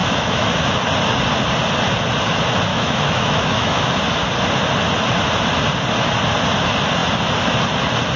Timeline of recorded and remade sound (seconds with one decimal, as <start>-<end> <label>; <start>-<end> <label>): 0.0-0.7 remade; 0.7-2.7 recorded; 2.7-3.9 remade; 3.9-8.2 recorded